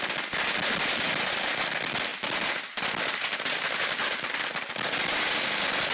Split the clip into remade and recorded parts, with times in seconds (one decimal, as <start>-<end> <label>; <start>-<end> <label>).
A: 0.0-5.9 recorded